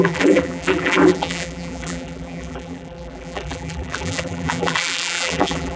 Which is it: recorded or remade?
remade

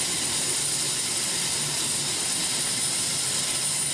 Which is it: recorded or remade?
recorded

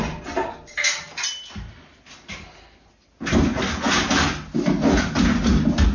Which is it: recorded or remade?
recorded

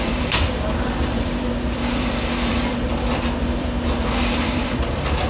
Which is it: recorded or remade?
remade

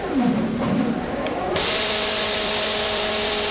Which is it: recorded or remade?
remade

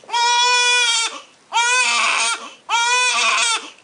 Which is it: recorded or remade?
recorded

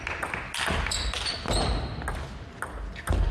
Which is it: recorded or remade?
recorded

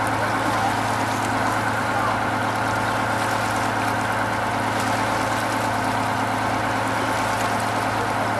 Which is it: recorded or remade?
recorded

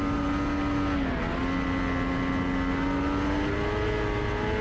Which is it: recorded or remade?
recorded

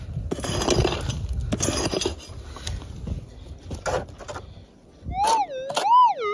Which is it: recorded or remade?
recorded